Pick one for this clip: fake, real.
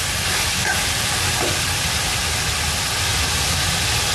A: real